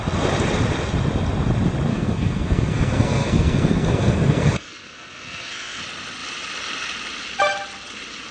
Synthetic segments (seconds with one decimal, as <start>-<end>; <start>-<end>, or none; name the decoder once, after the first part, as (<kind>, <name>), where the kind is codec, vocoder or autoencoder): 1.9-5.8 (codec, SNAC)